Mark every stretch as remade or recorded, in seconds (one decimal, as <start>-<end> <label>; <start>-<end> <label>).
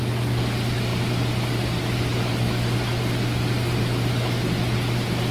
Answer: 0.0-5.3 recorded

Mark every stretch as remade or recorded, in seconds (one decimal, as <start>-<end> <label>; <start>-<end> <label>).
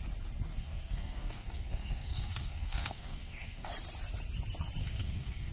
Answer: 0.0-0.5 recorded; 0.5-3.7 remade; 3.7-4.8 recorded; 4.8-5.5 remade